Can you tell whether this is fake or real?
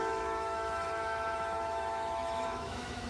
fake